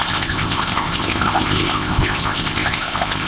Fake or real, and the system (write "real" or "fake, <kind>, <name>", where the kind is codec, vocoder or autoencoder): fake, codec, ZipCodec